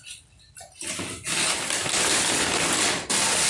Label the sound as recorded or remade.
recorded